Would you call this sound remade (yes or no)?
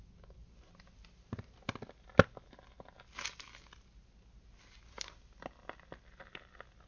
no